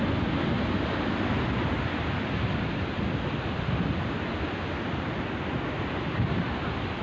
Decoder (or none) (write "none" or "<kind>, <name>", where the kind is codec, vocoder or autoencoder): none